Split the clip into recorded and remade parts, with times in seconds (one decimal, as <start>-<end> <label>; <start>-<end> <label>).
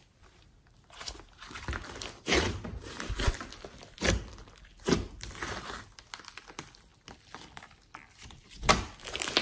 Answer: 0.0-9.4 recorded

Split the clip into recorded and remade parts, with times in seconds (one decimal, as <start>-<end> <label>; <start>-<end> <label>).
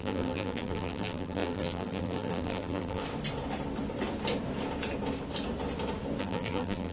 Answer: 0.0-3.0 remade; 3.0-6.2 recorded; 6.2-6.9 remade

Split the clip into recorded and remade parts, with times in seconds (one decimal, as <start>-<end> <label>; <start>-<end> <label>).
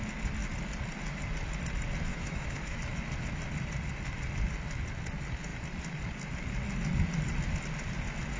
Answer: 0.0-2.1 recorded; 2.1-2.8 remade; 2.8-8.4 recorded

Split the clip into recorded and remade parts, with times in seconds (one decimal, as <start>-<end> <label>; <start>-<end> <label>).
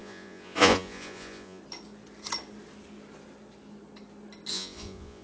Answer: 0.0-1.6 remade; 1.6-4.5 recorded; 4.5-5.2 remade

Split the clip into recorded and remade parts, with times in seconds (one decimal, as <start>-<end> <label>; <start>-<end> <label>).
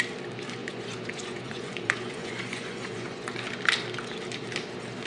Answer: 0.0-0.6 recorded; 0.6-3.5 remade; 3.5-5.1 recorded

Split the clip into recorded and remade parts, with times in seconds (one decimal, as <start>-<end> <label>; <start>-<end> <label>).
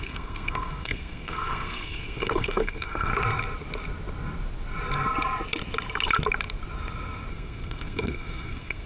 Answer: 0.0-3.1 remade; 3.1-7.3 recorded; 7.3-8.9 remade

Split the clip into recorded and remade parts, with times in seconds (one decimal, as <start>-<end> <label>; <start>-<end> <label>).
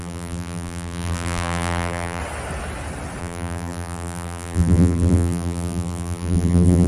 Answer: 0.0-2.2 remade; 2.2-3.2 recorded; 3.2-6.9 remade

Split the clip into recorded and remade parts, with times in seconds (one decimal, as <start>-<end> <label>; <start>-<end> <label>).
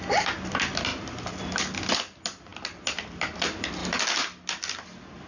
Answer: 0.0-0.9 recorded; 0.9-1.4 remade; 1.4-3.8 recorded; 3.8-5.3 remade